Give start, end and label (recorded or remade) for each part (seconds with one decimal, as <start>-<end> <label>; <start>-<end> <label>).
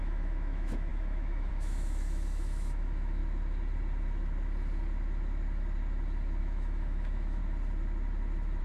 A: 0.0-3.2 remade; 3.2-6.4 recorded; 6.4-7.4 remade; 7.4-8.6 recorded